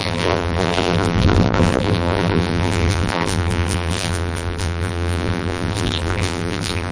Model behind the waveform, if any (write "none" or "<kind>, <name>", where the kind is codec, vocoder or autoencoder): vocoder, BigVGAN v2